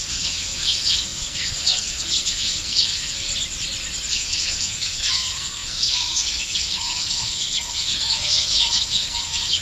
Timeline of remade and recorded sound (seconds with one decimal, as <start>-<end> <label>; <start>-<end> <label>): 0.0-3.3 remade; 3.3-4.1 recorded; 4.1-9.6 remade